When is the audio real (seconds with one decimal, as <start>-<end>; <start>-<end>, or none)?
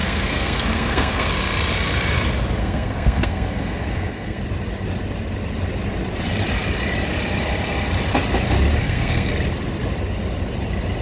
1.3-2.6; 4.4-8.8; 9.3-11.0